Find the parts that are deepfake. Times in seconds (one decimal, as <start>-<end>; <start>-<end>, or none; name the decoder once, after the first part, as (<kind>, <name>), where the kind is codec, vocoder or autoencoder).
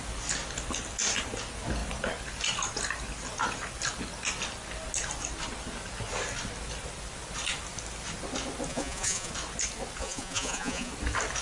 8.7-9.3 (vocoder, Vocos); 10.0-10.9